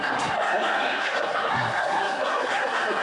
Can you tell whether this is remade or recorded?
remade